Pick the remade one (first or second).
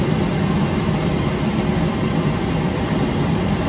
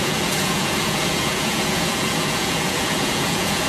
second